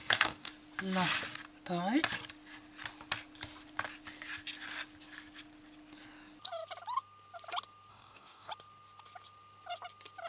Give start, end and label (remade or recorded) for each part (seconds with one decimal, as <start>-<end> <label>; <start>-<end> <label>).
0.0-0.5 remade; 0.5-7.9 recorded; 7.9-8.5 remade; 8.5-10.3 recorded